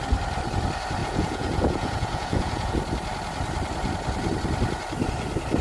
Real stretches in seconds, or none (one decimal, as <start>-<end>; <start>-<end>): 0.0-1.0; 2.7-5.6